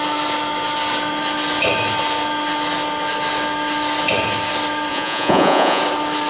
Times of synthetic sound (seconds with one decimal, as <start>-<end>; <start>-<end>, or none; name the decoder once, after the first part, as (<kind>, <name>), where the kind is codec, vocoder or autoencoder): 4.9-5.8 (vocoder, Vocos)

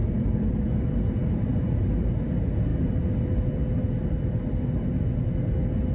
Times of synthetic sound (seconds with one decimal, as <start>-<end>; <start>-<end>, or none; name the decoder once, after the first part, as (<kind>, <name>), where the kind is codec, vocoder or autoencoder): 0.0-0.7 (vocoder, BigVGAN v2)

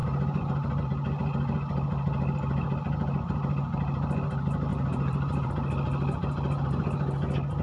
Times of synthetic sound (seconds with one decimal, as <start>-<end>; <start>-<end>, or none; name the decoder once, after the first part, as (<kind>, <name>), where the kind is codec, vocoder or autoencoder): 4.7-5.5 (vocoder, BigVGAN v2)

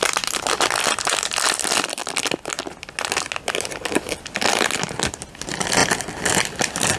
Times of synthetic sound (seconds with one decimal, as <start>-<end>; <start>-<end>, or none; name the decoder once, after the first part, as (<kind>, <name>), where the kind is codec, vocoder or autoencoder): none

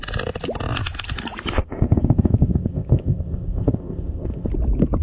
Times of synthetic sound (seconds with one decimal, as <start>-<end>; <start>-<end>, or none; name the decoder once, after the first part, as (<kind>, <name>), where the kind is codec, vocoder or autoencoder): 1.5-4.5 (codec, ZipCodec)

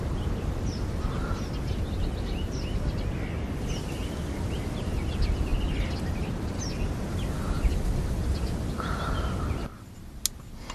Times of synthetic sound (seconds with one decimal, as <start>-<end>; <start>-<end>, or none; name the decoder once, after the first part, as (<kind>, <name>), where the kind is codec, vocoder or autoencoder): none

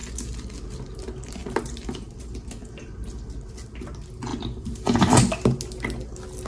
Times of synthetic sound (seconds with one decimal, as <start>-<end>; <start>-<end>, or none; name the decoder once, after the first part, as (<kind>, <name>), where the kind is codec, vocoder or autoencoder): 1.4-2.1 (vocoder, BigVGAN v2); 2.6-3.2; 4.3-5.0